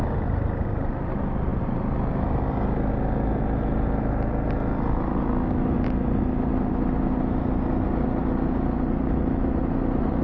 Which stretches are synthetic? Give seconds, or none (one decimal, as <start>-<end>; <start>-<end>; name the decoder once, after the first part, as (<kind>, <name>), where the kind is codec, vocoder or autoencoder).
none